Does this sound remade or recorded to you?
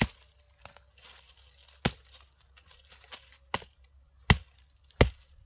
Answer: recorded